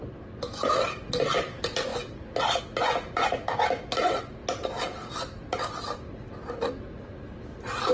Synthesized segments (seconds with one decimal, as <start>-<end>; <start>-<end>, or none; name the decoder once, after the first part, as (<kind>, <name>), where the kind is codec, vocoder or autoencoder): none

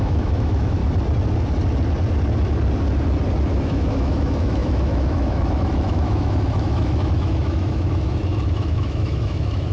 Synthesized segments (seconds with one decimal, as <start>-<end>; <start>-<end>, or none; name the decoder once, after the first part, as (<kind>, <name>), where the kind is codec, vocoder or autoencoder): 0.0-0.8 (autoencoder, DAC-VAE); 3.5-9.7